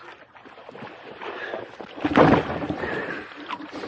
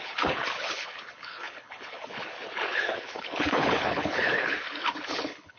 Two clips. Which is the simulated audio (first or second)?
second